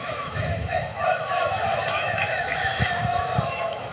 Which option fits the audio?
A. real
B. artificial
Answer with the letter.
B